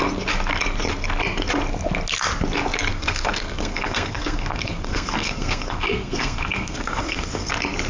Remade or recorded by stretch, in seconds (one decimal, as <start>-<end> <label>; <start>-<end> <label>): 0.0-2.9 recorded; 2.9-7.5 remade; 7.5-7.9 recorded